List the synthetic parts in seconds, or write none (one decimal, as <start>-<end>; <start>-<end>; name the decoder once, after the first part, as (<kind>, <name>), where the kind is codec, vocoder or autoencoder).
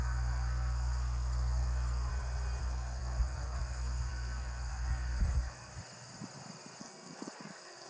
0.0-2.1 (codec, SNAC); 2.6-5.7; 6.8-7.9